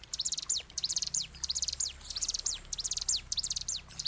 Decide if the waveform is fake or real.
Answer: fake